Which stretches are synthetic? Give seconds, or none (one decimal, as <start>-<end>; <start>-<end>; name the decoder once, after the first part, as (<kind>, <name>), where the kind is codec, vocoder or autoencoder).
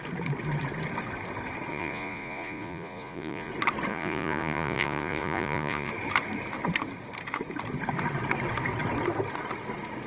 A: 1.7-3.5 (vocoder, Vocos); 3.9-5.9